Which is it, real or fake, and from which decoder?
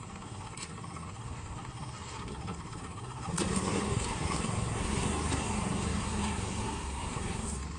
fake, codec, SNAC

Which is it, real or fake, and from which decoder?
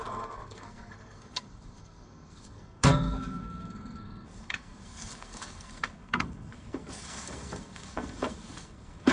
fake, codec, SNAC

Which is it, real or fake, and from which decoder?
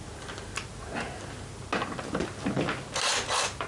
real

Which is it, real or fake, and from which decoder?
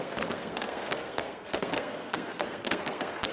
fake, codec, SNAC